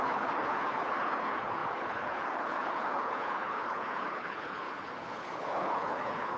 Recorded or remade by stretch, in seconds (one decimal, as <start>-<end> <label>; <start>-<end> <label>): 0.0-6.4 remade